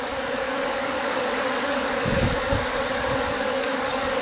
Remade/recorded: remade